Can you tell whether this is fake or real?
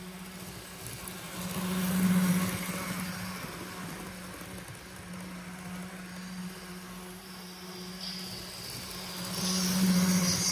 real